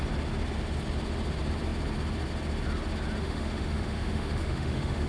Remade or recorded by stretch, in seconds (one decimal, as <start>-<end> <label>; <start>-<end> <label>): 0.0-3.2 recorded; 3.2-5.1 remade